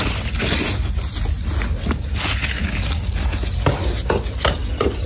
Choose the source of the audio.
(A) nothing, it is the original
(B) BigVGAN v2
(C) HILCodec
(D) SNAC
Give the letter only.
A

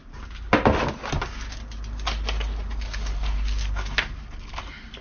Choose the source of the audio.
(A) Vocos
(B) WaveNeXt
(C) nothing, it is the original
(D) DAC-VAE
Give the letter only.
C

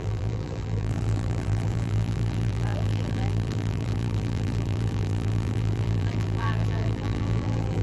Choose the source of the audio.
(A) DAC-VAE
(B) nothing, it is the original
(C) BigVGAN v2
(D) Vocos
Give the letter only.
C